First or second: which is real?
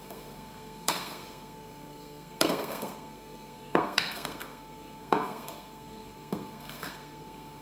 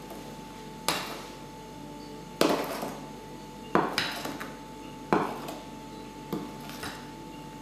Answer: second